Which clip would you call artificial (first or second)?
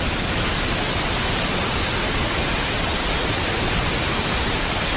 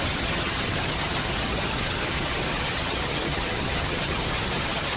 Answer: second